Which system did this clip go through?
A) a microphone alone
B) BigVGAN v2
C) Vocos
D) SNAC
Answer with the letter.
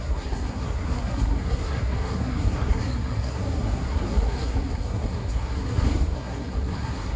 D